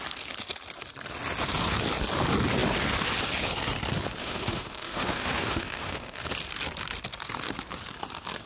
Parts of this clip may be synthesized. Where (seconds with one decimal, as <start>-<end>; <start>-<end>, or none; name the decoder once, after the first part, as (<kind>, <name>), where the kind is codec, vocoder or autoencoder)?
4.2-6.2 (autoencoder, DAC-VAE)

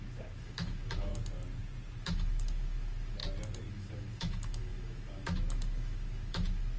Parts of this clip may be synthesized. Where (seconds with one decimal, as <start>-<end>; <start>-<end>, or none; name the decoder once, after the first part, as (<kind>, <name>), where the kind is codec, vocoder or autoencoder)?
0.0-1.1 (autoencoder, DAC-VAE); 2.0-3.2; 3.7-6.8

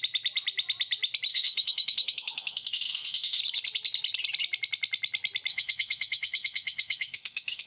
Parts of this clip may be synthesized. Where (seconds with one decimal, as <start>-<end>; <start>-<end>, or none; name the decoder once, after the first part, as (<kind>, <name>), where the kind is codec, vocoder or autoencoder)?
1.3-3.4 (autoencoder, DAC-VAE); 5.5-7.7

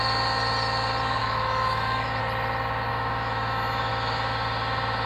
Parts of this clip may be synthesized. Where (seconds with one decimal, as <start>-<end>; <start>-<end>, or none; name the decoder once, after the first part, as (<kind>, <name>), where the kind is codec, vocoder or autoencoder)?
1.2-2.2 (autoencoder, DAC-VAE); 2.9-3.9